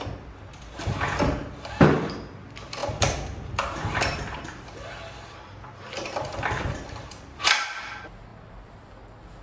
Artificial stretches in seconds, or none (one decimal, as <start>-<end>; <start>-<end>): 1.4-2.4; 2.8-7.4; 8.3-8.9